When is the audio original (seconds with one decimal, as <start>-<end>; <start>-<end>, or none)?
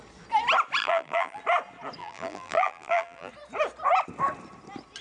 0.0-0.8; 1.4-2.0; 3.3-5.0